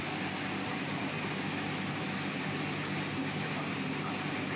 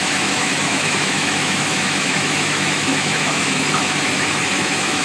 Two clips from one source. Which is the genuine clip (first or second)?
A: first